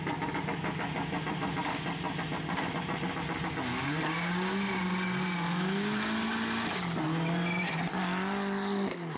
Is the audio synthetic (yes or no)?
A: no